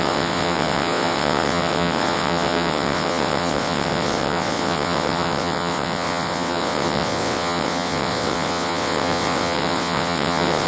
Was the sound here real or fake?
fake